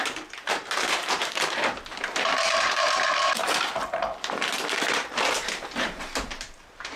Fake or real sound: fake